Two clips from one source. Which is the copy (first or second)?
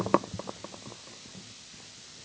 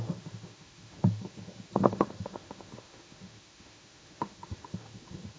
second